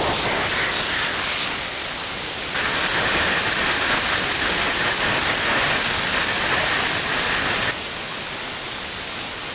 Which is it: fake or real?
real